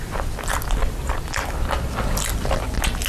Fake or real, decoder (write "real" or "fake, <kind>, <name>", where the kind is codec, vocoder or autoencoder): real